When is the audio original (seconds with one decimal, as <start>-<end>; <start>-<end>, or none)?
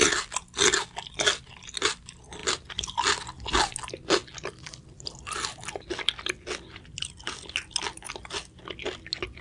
0.0-9.4